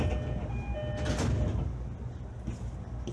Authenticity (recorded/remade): recorded